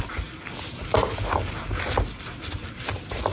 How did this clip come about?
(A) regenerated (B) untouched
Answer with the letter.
B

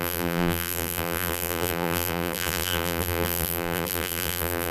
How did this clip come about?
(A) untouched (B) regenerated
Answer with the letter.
B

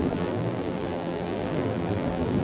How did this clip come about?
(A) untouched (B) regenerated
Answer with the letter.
B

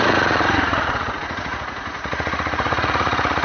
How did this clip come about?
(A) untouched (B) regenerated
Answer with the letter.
B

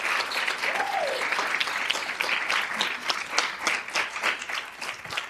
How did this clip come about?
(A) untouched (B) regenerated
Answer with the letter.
A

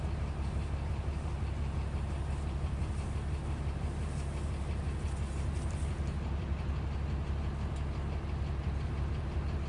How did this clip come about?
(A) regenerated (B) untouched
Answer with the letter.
B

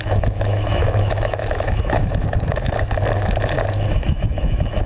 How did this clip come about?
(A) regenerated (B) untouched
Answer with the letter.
A